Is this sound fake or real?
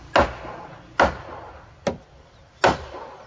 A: real